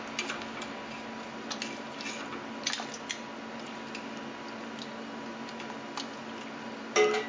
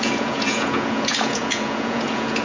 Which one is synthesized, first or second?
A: second